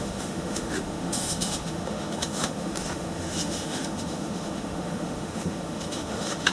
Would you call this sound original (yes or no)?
no